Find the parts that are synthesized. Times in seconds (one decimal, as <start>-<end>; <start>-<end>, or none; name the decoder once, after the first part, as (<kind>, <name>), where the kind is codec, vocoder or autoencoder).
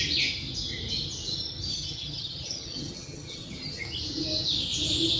1.7-3.8 (vocoder, HiFi-GAN)